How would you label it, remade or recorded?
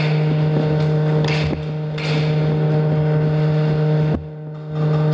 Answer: recorded